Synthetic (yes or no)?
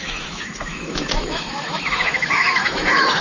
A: yes